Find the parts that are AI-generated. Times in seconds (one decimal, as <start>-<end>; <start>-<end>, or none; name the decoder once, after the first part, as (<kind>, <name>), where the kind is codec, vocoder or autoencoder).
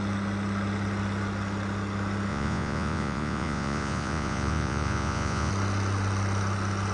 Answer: 2.3-5.5 (vocoder, Vocos)